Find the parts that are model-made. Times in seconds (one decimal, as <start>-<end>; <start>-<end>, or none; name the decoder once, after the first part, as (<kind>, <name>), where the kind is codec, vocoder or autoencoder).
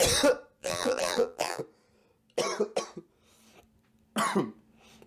0.6-1.6 (vocoder, BigVGAN v2)